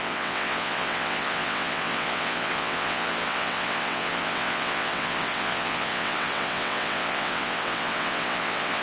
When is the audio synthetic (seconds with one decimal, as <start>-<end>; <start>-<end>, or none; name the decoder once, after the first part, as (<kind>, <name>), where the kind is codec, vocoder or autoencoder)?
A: 0.0-8.8 (vocoder, WaveNeXt)